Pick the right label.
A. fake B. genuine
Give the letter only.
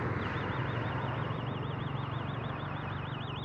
B